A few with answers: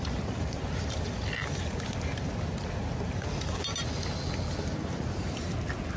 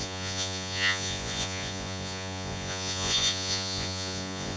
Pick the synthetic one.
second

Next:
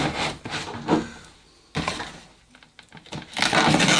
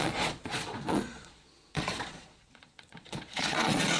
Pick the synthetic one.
second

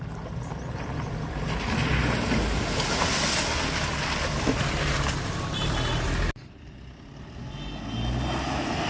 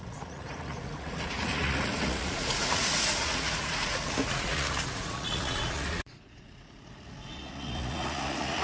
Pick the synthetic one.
second